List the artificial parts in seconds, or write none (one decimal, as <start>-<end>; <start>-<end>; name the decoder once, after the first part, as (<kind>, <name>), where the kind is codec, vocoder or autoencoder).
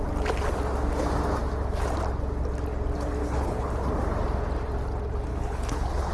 3.2-3.7 (codec, HILCodec); 5.3-6.1